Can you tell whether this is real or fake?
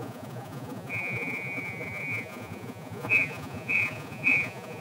fake